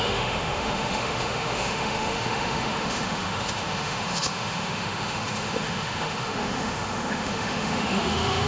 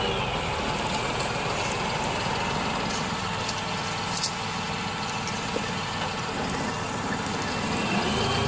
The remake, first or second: first